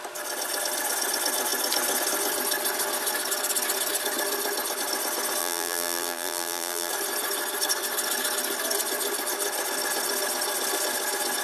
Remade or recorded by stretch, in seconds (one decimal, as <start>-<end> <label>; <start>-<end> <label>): 0.0-5.4 recorded; 5.4-6.9 remade; 6.9-11.4 recorded